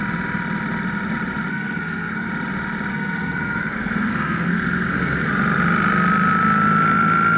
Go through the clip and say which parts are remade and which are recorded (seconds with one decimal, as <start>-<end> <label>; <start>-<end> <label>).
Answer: 0.0-1.5 recorded; 1.5-2.3 remade; 2.3-2.9 recorded; 2.9-5.3 remade; 5.3-7.4 recorded